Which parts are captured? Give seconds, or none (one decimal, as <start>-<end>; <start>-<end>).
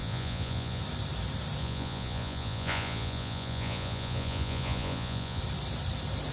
0.8-1.6; 5.4-6.3